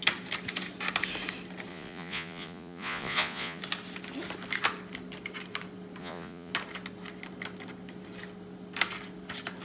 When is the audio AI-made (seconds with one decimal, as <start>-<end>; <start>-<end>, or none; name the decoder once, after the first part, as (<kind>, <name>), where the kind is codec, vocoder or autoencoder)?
1.7-3.6 (vocoder, Vocos); 6.0-6.5